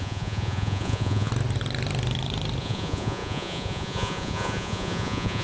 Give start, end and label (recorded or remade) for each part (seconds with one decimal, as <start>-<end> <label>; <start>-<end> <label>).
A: 0.0-1.3 remade; 1.3-2.6 recorded; 2.6-5.4 remade